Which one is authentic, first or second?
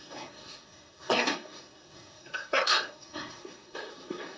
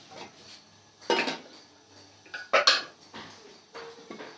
second